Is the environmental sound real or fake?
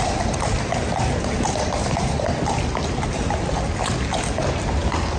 real